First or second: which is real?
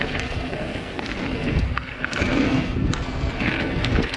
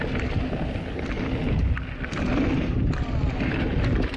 second